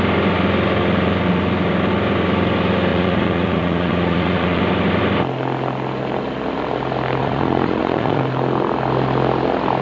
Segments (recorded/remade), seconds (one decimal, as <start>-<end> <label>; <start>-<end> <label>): 0.0-2.9 recorded; 2.9-4.6 remade; 4.6-7.2 recorded; 7.2-8.2 remade; 8.2-9.8 recorded